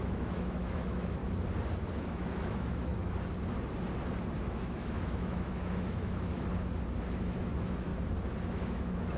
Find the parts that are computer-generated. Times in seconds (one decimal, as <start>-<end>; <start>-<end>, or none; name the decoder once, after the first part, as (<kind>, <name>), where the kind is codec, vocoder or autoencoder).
0.0-1.2 (autoencoder, DAC-VAE); 1.9-2.9; 4.4-6.3; 7.0-7.9; 8.5-9.2